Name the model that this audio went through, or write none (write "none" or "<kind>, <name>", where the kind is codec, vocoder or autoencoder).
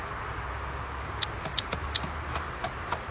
none